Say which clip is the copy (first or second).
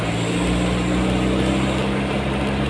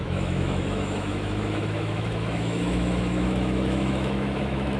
second